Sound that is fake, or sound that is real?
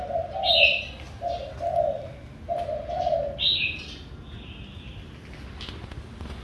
real